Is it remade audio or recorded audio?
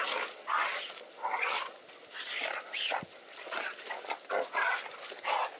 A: recorded